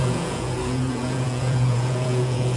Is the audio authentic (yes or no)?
no